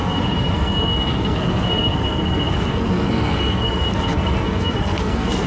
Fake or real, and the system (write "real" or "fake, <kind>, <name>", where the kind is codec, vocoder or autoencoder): fake, codec, SNAC